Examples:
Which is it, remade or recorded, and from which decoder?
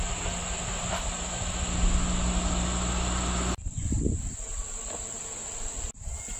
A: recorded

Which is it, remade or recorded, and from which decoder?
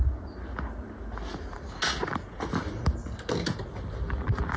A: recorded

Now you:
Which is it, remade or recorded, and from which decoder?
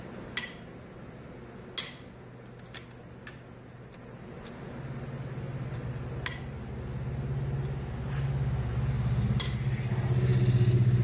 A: recorded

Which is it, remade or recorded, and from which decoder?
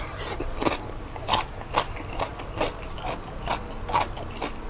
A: recorded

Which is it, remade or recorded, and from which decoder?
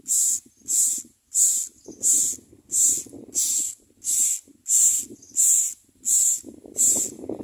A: recorded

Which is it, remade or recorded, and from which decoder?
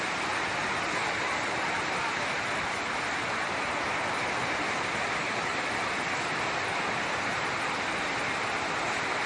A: recorded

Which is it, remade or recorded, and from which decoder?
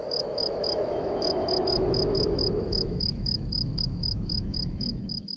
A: remade, autoencoder, DAC-VAE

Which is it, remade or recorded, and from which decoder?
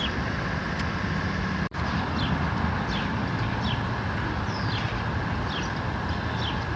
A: recorded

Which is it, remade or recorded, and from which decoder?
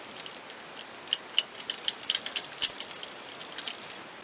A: recorded